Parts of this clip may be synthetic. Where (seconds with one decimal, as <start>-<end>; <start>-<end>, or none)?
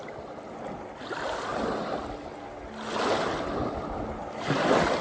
none